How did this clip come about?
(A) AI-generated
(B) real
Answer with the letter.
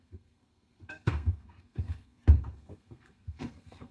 A